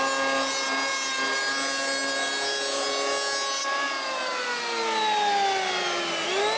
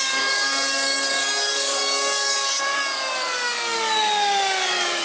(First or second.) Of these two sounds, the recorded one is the first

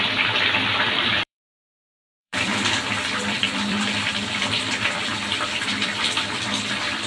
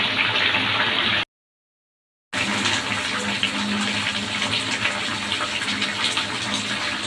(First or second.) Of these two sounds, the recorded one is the second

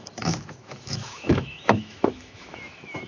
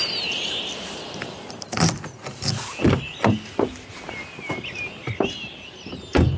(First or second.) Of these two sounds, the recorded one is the second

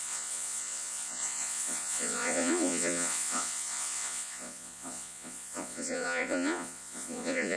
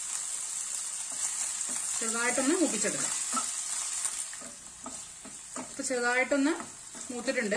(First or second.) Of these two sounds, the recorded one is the second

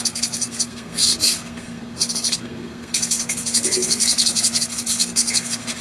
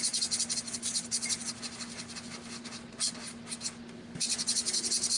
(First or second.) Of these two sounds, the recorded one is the second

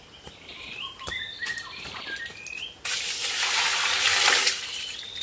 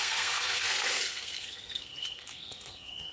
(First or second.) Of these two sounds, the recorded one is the first